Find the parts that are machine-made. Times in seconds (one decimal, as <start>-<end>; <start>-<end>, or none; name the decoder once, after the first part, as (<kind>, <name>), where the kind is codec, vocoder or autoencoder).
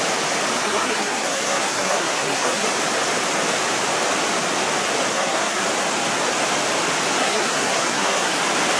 0.6-2.7 (codec, SNAC); 5.1-5.6; 7.2-8.4